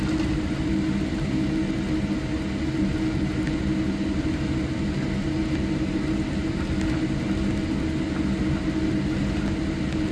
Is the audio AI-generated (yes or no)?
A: no